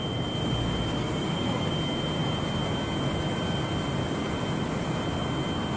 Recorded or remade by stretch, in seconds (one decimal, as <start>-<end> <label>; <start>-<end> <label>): 0.0-1.0 recorded; 1.0-1.7 remade; 1.7-5.8 recorded